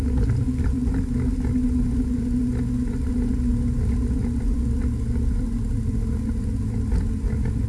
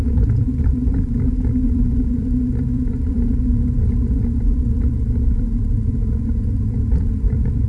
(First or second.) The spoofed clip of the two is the second